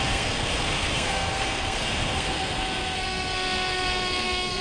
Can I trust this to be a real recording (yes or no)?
no